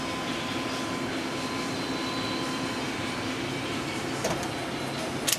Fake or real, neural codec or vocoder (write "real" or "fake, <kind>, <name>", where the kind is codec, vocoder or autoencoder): real